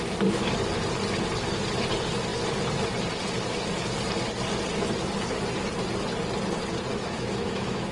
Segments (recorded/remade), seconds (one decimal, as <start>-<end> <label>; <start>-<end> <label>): 0.0-6.9 recorded; 6.9-7.9 remade